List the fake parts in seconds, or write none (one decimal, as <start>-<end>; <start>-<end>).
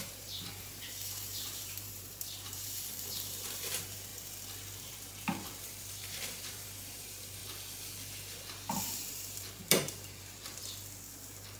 0.0-4.1; 4.8-7.4; 9.1-10.6